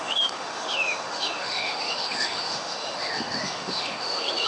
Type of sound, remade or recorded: remade